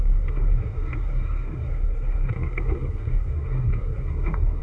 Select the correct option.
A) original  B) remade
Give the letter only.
B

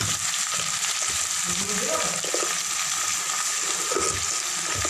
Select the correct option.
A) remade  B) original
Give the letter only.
B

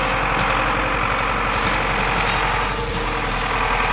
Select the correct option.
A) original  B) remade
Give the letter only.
A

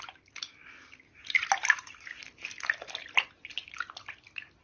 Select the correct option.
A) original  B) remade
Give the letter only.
A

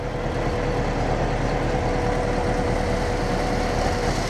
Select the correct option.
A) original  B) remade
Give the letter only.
A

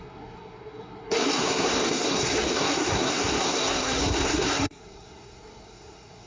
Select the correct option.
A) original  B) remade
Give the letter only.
B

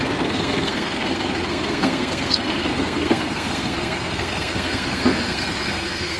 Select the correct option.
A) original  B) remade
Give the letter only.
B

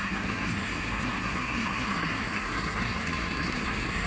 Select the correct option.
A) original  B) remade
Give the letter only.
B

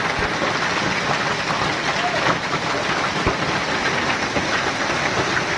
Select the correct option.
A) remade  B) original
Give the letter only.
B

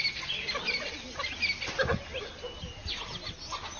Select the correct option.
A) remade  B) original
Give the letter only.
B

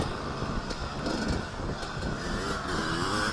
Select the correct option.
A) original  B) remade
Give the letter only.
A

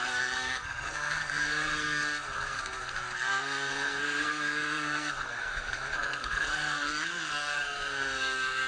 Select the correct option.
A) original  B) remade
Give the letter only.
B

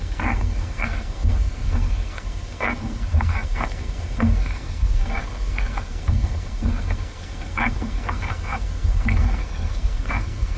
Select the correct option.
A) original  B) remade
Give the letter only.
B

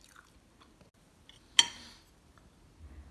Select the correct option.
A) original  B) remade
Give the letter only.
A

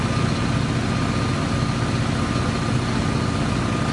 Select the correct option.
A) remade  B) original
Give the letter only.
B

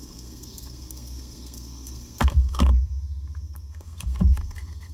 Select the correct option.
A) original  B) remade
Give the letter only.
B